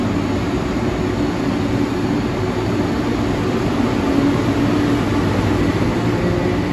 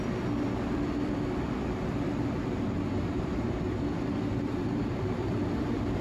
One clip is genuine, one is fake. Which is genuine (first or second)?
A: first